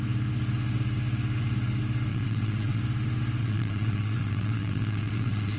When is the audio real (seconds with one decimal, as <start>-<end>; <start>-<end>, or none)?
0.0-2.1; 2.8-3.4